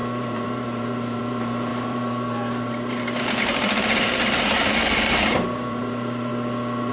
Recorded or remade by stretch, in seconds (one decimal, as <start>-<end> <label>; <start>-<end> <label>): 0.0-6.3 remade; 6.3-6.9 recorded